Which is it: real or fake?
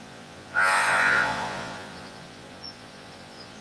fake